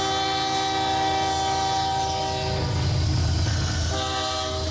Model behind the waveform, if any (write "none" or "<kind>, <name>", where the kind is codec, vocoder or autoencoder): none